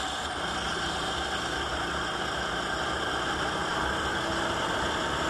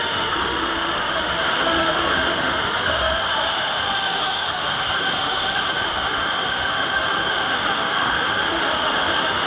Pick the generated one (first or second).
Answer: second